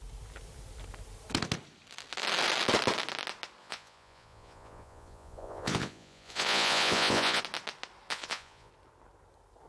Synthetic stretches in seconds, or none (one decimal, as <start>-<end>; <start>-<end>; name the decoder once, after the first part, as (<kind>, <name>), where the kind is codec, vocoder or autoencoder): 3.6-7.4 (vocoder, Vocos); 8.1-8.7